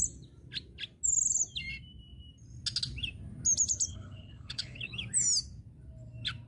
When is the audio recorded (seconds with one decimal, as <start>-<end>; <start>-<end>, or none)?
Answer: 0.0-3.9; 4.9-6.5